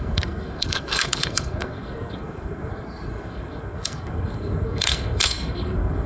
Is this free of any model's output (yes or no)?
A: no